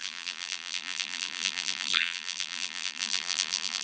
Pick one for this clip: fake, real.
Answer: fake